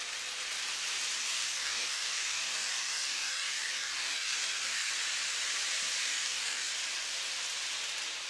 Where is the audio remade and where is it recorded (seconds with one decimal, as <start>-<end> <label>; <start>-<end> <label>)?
0.0-1.2 recorded; 1.2-4.9 remade; 4.9-6.0 recorded; 6.0-6.7 remade; 6.7-8.3 recorded